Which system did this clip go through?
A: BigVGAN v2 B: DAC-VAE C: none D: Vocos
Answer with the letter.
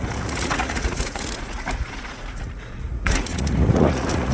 D